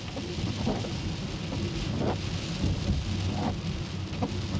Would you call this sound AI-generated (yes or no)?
no